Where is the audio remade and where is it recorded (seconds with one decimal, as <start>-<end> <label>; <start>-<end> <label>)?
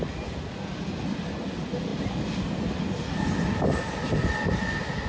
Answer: 0.0-5.1 recorded